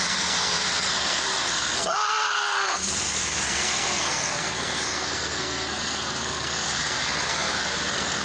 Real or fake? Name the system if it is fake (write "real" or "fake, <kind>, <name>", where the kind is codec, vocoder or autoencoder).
fake, codec, SNAC